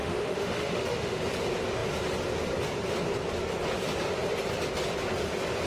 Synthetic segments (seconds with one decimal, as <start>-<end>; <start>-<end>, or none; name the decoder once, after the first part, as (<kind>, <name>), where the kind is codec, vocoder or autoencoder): 0.0-1.2 (autoencoder, DAC-VAE)

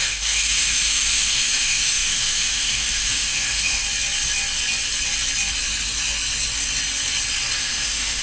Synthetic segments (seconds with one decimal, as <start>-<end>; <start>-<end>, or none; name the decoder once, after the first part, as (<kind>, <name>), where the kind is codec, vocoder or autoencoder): 0.0-3.8 (autoencoder, DAC-VAE); 7.6-8.2